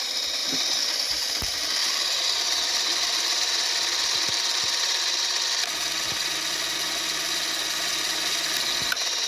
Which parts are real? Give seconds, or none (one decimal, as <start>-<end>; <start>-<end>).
0.0-0.4; 1.3-1.8; 5.6-9.3